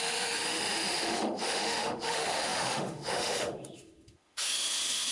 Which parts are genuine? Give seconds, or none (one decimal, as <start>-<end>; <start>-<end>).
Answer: none